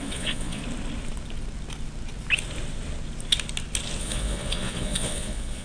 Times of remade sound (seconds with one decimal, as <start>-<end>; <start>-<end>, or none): 0.0-0.6; 4.0-5.6